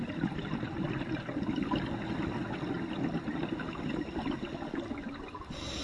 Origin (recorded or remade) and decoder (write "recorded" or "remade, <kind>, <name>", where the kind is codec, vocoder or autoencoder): recorded